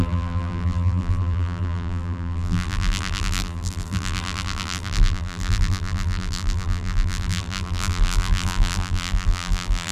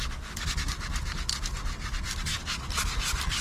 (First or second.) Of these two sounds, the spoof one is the first